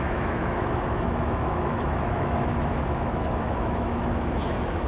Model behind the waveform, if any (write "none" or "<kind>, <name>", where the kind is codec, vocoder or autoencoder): autoencoder, DAC-VAE